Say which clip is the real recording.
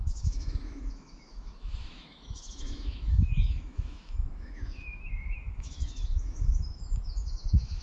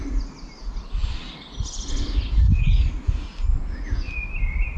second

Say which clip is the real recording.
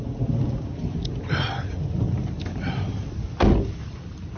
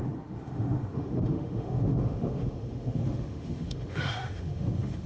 first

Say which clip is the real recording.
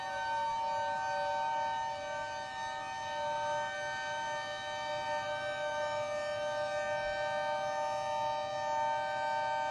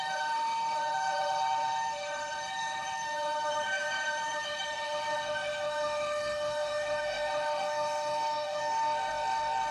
first